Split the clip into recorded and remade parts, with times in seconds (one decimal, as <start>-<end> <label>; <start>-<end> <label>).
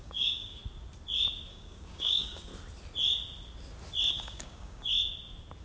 0.0-0.6 remade; 0.6-1.5 recorded; 1.5-2.5 remade; 2.5-4.1 recorded; 4.1-4.9 remade; 4.9-5.6 recorded